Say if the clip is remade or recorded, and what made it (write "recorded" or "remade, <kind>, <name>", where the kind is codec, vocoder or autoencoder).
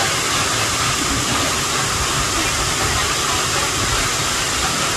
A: recorded